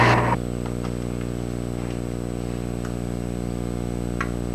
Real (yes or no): yes